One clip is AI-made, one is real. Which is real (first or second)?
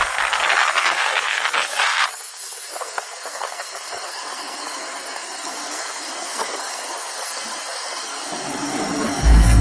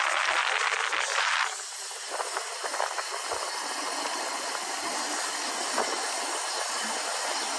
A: second